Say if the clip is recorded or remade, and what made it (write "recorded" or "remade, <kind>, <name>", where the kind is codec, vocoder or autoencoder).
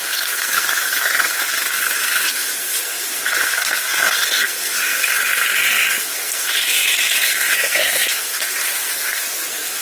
remade, codec, SNAC